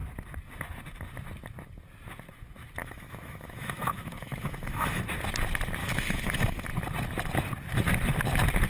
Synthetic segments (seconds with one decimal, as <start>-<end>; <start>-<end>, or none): 2.8-5.0; 5.8-6.7